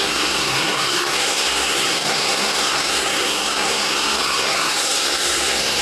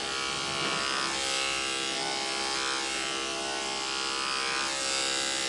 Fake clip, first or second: first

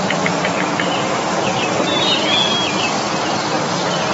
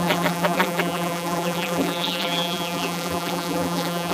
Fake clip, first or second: second